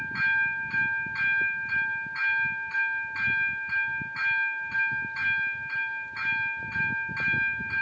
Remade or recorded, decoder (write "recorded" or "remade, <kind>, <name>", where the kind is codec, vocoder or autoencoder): recorded